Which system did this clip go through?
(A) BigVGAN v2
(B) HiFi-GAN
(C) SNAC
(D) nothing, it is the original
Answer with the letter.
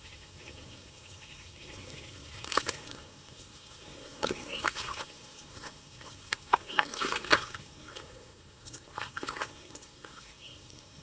C